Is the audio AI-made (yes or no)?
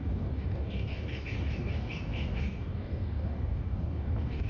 yes